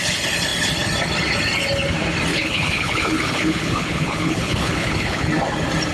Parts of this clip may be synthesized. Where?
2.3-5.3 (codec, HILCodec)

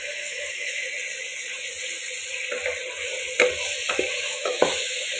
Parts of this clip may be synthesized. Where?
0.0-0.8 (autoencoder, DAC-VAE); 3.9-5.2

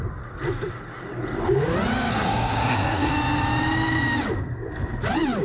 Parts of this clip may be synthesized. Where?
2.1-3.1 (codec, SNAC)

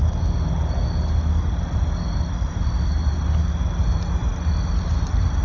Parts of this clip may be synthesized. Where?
none

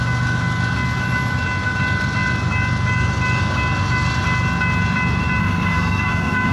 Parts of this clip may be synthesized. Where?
5.4-6.5 (codec, SNAC)

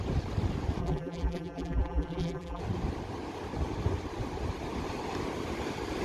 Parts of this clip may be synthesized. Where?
0.8-2.6 (vocoder, BigVGAN v2)

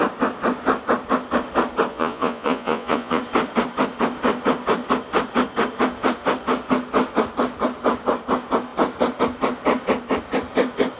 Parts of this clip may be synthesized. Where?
1.9-3.2 (vocoder, Vocos)